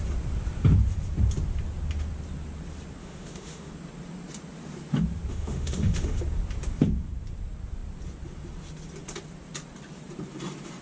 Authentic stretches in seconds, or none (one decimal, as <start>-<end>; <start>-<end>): 0.0-3.0; 3.7-5.3; 6.2-10.8